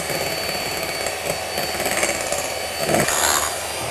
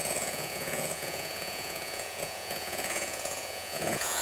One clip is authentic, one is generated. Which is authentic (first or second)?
first